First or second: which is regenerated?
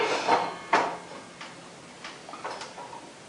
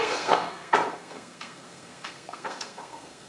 second